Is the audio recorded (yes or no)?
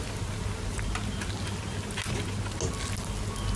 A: yes